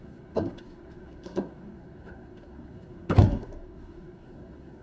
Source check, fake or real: fake